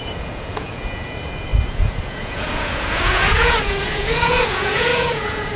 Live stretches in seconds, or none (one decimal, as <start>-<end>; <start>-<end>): none